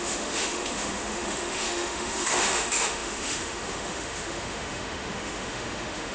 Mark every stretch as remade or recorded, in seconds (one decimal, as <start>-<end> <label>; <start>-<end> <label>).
0.0-6.1 remade